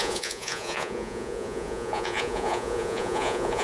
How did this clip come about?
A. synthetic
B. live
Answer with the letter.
A